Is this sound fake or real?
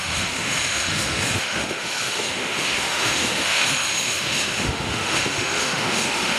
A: fake